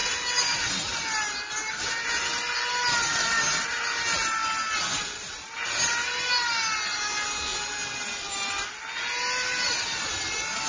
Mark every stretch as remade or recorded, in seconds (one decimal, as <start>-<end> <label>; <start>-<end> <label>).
0.0-10.7 recorded